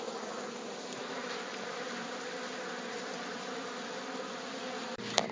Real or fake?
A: real